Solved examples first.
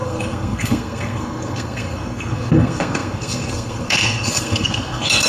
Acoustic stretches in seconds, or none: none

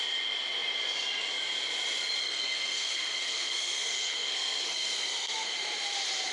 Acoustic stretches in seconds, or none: 0.0-2.2; 5.5-6.3

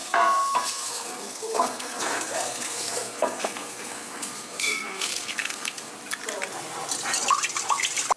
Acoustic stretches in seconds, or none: 5.9-8.2

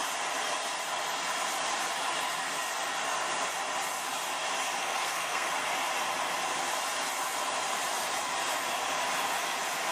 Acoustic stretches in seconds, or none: 0.0-4.8; 5.5-9.9

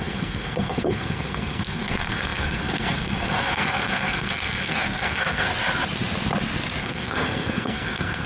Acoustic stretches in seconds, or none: 5.5-6.8